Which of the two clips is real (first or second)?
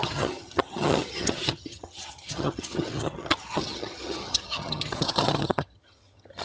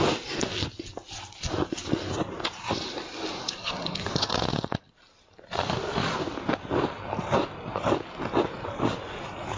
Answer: second